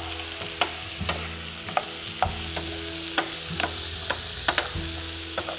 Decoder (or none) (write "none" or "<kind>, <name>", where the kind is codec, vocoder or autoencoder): none